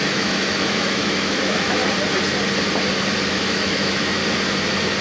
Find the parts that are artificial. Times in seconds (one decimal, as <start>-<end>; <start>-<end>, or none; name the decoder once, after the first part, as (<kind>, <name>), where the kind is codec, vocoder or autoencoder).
0.0-1.8 (autoencoder, DAC-VAE); 3.3-4.2